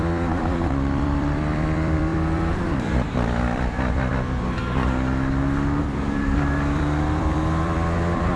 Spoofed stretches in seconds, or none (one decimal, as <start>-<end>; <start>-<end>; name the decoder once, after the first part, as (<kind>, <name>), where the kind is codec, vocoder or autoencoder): 0.0-4.6 (vocoder, BigVGAN v2); 5.8-8.4